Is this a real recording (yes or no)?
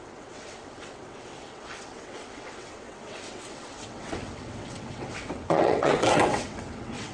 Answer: no